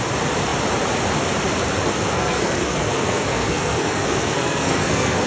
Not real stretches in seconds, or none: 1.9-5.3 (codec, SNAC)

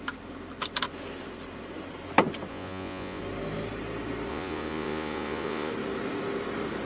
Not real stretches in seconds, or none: 2.5-3.2 (vocoder, Vocos); 4.3-5.7

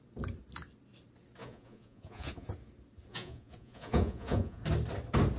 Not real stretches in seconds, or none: 1.4-2.5 (vocoder, Vocos); 3.1-4.6

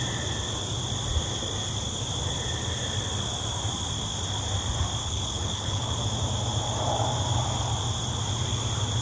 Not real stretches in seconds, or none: 5.0-5.9 (codec, HILCodec)

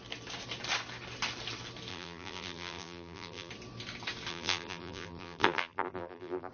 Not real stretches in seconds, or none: 1.9-3.5 (vocoder, BigVGAN v2); 4.3-6.5

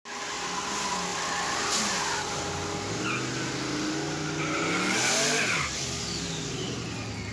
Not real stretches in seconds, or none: none

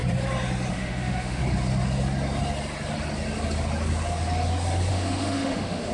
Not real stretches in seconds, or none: 0.7-1.4 (autoencoder, DAC-VAE); 4.9-5.9

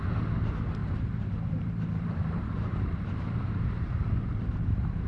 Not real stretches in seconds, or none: 0.8-3.9 (vocoder, BigVGAN v2)